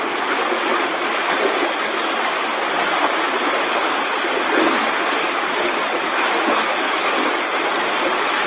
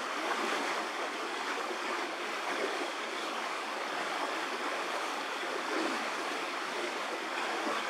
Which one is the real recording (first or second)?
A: first